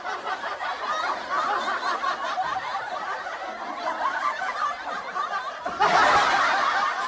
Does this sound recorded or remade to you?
recorded